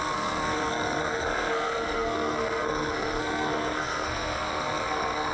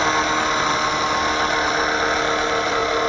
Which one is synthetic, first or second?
first